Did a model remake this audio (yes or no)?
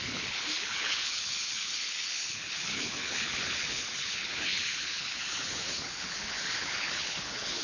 yes